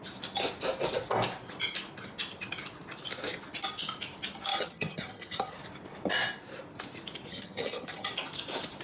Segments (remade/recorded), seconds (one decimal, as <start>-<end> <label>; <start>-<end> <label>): 0.0-4.5 recorded; 4.5-5.6 remade; 5.6-7.3 recorded; 7.3-8.1 remade; 8.1-8.8 recorded